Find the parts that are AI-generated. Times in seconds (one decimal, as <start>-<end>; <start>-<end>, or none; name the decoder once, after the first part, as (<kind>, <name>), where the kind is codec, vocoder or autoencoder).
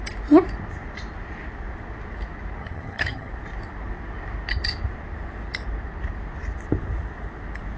2.6-3.3 (vocoder, HiFi-GAN)